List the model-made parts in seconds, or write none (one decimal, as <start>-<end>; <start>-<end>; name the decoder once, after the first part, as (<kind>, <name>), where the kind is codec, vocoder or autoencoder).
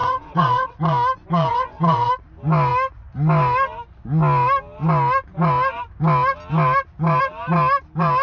0.0-0.8 (vocoder, WaveNeXt); 1.5-2.1